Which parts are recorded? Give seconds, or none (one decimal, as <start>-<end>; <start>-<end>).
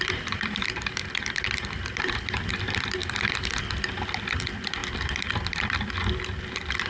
3.0-4.3; 4.8-5.3